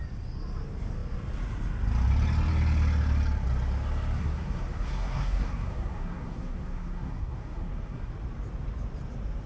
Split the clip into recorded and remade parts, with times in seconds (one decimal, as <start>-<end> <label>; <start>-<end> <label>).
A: 0.0-4.2 recorded; 4.2-8.1 remade; 8.1-9.5 recorded